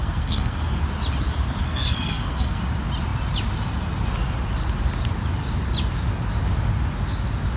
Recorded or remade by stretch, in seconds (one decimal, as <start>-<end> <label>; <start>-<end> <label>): 0.0-0.6 remade; 0.6-1.6 recorded; 1.6-2.6 remade; 2.6-7.6 recorded